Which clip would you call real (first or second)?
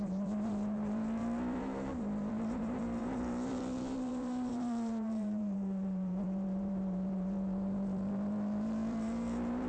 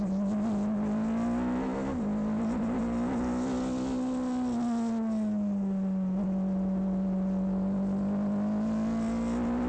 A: second